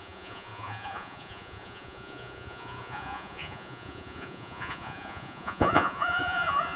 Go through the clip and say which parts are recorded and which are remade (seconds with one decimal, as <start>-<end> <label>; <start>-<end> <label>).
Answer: 0.0-6.8 remade